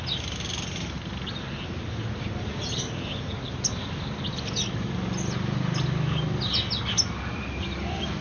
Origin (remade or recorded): recorded